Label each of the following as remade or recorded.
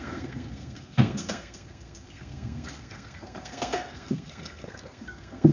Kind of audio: remade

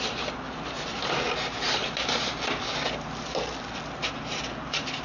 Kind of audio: recorded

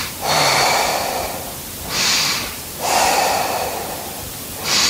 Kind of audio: recorded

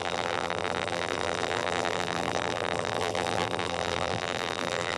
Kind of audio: remade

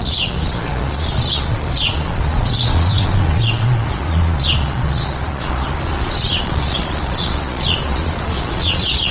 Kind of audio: remade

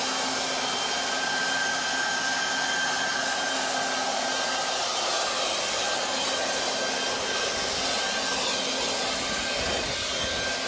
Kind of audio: recorded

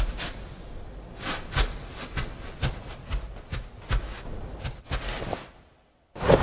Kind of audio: recorded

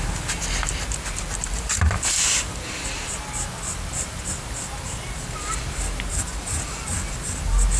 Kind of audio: recorded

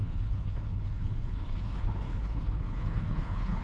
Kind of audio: remade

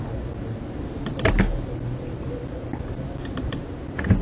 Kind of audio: recorded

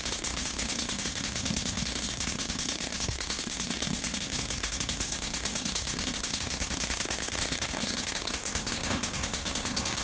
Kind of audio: remade